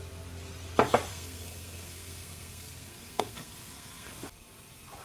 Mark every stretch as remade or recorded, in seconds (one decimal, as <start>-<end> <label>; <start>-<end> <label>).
0.0-1.1 recorded; 1.1-4.1 remade; 4.1-5.0 recorded